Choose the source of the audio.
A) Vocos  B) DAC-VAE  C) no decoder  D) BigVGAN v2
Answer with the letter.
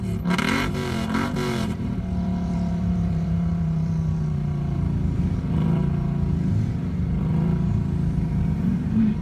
D